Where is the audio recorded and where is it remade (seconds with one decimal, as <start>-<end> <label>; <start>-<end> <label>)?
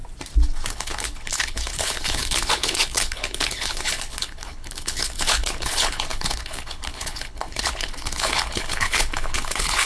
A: 0.0-0.7 recorded; 0.7-9.9 remade